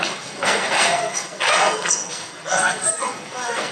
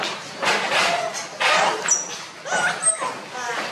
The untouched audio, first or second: second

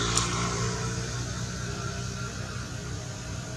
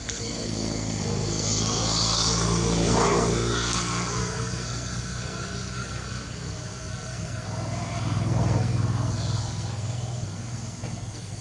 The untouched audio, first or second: first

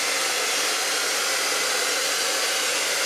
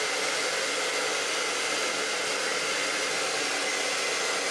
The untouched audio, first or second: second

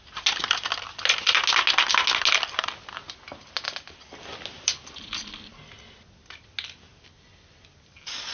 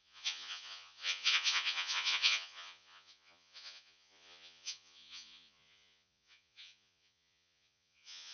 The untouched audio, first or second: first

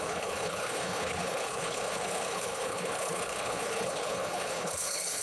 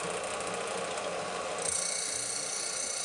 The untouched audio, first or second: second